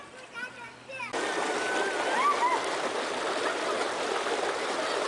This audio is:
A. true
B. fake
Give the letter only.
A